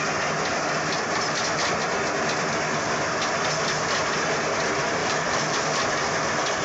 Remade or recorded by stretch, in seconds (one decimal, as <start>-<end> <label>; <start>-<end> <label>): 0.0-5.0 recorded; 5.0-5.6 remade; 5.6-6.6 recorded